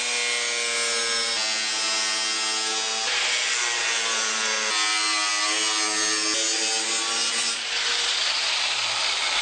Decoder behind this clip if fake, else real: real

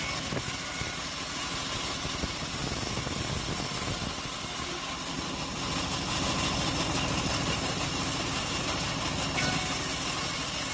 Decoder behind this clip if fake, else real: real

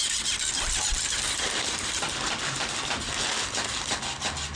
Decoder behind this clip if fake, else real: real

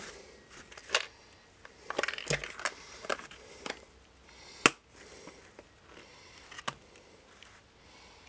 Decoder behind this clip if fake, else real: real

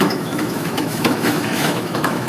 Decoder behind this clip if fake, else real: fake, autoencoder, DAC-VAE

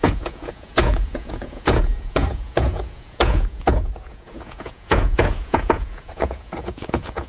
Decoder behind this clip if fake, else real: fake, vocoder, Vocos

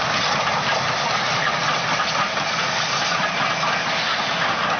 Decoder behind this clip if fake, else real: real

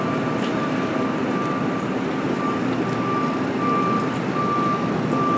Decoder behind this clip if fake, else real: real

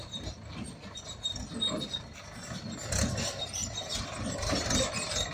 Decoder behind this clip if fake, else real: real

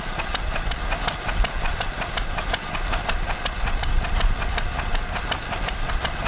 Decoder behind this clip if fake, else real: real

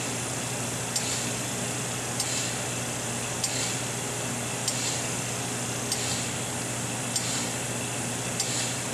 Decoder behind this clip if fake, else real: real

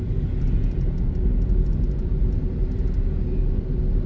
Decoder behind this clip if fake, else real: real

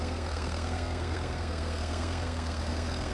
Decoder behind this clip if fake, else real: fake, codec, SNAC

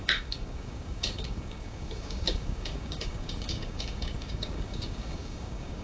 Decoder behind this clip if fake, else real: fake, codec, DAC